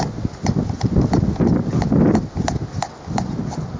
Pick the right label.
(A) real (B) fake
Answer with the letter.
A